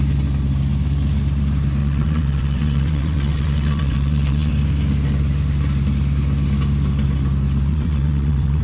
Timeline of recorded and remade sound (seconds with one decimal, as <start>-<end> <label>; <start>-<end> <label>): 0.0-1.8 recorded; 1.8-4.5 remade; 4.5-7.7 recorded; 7.7-8.6 remade